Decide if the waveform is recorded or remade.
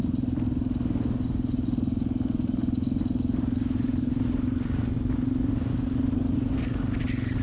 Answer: recorded